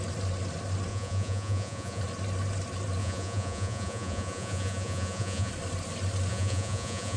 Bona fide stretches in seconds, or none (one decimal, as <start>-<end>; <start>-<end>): 0.0-0.9; 2.0-3.0; 5.5-6.3